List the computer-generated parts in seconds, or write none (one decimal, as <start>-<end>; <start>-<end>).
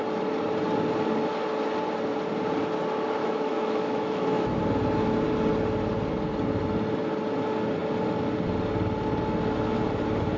3.2-4.6